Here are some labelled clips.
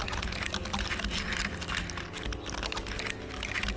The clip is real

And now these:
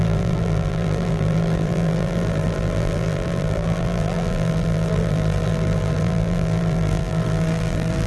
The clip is fake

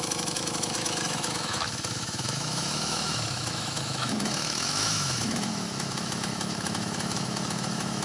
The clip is fake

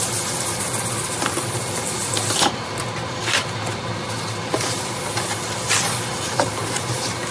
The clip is real